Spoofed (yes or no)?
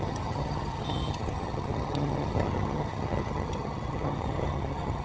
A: yes